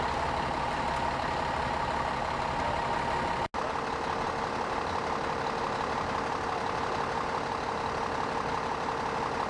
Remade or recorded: recorded